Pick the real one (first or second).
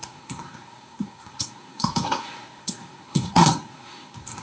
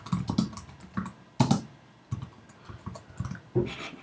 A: second